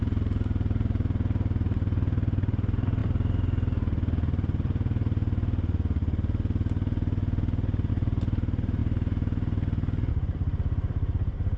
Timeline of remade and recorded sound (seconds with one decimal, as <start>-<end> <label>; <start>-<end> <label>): 0.0-3.0 remade; 3.0-7.9 recorded; 7.9-8.8 remade; 8.8-10.1 recorded; 10.1-11.6 remade